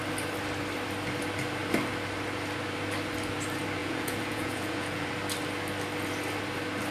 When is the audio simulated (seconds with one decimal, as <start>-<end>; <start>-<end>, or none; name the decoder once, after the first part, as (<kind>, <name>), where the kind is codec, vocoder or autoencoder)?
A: 3.8-5.1 (vocoder, Vocos)